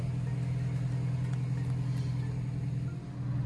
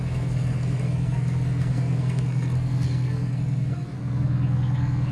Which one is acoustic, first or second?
first